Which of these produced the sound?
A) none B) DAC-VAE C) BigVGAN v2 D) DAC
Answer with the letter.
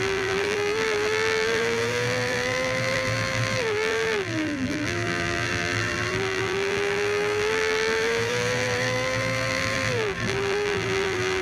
C